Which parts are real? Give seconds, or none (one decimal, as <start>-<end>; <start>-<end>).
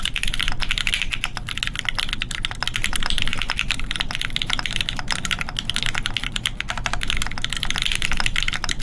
0.0-8.8